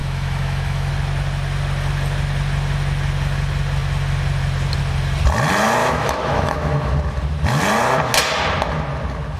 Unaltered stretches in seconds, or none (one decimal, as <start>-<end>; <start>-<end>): 0.9-5.8; 6.9-9.4